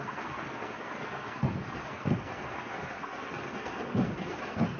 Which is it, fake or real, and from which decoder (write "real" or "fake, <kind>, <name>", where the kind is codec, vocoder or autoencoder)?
fake, codec, SNAC